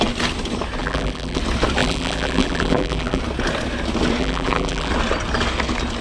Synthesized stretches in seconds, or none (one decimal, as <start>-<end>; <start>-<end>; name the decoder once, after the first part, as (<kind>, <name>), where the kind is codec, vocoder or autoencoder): 0.8-1.4 (vocoder, BigVGAN v2); 1.8-3.2; 4.2-4.9